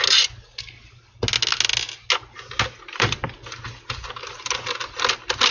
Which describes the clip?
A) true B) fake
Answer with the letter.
A